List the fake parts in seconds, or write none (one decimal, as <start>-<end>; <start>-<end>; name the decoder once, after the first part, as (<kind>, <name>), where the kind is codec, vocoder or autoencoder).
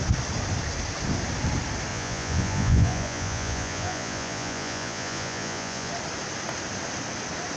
1.9-5.9 (vocoder, Vocos)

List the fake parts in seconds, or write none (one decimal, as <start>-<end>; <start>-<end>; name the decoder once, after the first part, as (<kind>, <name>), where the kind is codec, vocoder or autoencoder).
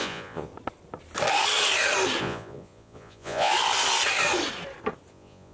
0.0-0.5 (vocoder, Vocos); 2.2-3.5; 5.1-5.5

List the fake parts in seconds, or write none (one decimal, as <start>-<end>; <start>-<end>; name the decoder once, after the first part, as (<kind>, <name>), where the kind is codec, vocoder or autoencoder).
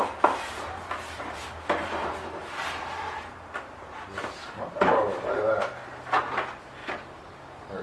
4.4-5.4 (vocoder, BigVGAN v2); 6.8-7.8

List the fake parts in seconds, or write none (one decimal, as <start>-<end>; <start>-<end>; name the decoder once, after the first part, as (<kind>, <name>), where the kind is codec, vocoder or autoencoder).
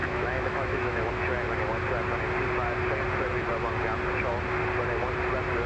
0.0-1.1 (autoencoder, DAC-VAE)